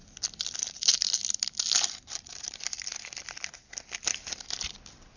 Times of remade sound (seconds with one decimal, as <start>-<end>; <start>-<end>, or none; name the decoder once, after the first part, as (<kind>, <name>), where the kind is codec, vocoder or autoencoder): none